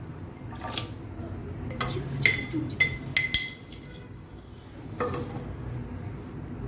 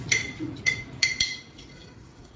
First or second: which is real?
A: first